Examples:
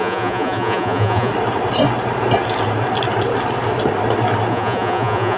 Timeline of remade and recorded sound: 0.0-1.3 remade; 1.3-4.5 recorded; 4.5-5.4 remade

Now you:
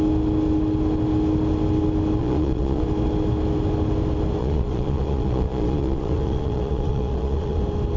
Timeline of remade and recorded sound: 0.0-2.2 recorded; 2.2-2.8 remade; 2.8-4.4 recorded; 4.4-7.6 remade; 7.6-8.0 recorded